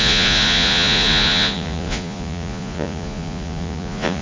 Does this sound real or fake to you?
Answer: fake